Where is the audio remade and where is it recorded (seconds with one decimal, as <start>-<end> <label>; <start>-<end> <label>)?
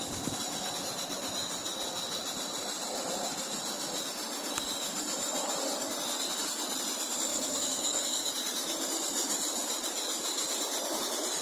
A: 0.0-7.3 recorded; 7.3-8.3 remade; 8.3-11.4 recorded